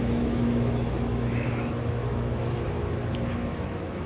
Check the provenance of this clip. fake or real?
fake